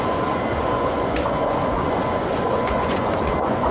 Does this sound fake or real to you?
fake